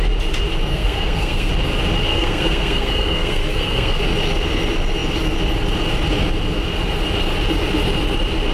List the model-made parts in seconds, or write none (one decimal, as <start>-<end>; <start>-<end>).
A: 0.7-1.5; 2.1-4.0